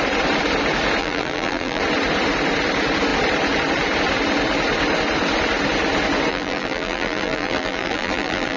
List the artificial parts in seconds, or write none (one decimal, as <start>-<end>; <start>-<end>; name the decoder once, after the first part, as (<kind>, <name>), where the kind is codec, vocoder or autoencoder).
1.0-1.8 (vocoder, BigVGAN v2); 6.3-8.6